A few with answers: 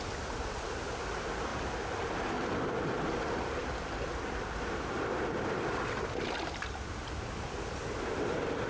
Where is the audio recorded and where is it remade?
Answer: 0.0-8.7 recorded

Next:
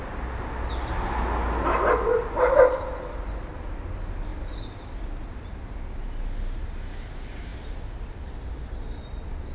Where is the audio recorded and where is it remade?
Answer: 0.0-9.5 recorded

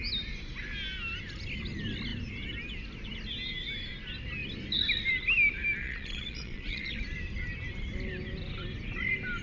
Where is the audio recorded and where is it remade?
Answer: 0.0-5.8 recorded; 5.8-6.9 remade; 6.9-9.4 recorded

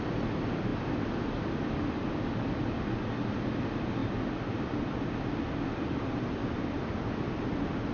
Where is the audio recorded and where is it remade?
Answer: 0.0-7.9 recorded

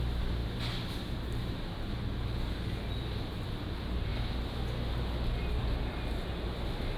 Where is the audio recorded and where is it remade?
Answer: 0.0-7.0 recorded